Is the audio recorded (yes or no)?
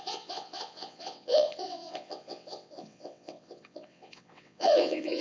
no